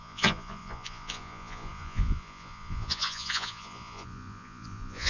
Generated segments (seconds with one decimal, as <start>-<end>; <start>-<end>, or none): 0.0-5.1